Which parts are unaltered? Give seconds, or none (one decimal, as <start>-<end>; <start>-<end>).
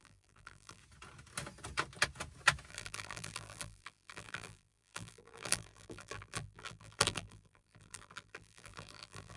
0.8-2.7